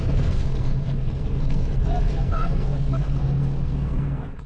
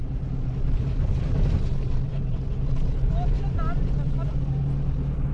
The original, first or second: second